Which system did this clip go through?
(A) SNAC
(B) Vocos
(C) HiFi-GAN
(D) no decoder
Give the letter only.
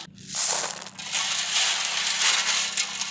D